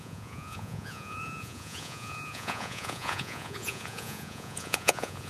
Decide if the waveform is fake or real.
fake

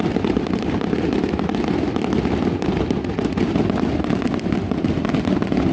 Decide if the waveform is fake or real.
real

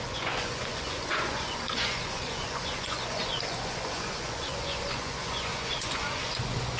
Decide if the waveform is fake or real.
fake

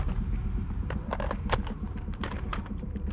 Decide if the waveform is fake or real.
fake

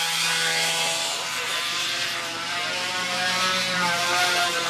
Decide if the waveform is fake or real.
fake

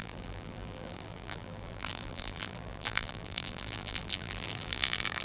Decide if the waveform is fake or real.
fake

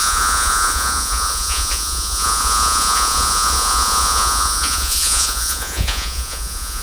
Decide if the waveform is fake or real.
fake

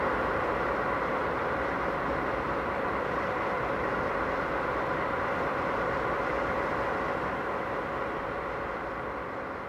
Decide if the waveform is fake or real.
fake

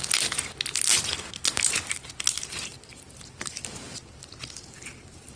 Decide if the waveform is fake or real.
real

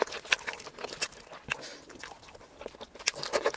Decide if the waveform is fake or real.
real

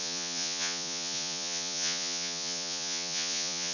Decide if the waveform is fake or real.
fake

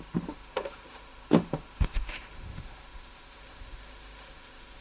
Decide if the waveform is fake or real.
fake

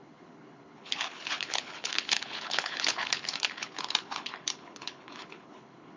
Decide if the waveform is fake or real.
fake